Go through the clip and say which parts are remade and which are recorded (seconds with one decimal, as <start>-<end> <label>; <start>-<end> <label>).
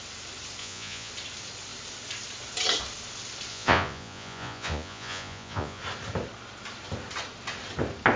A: 0.0-0.6 recorded; 0.6-1.1 remade; 1.1-3.5 recorded; 3.5-5.8 remade; 5.8-8.2 recorded